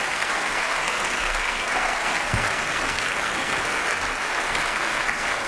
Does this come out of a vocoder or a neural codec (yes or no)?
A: yes